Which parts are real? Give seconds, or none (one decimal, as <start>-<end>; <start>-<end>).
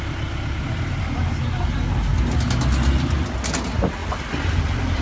0.0-5.0